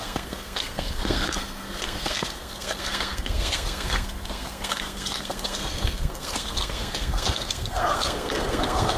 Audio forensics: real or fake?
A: fake